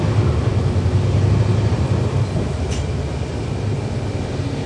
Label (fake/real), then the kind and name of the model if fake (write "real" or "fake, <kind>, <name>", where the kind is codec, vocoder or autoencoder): real